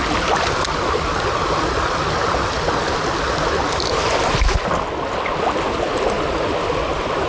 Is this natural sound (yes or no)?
yes